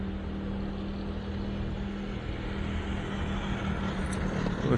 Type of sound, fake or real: real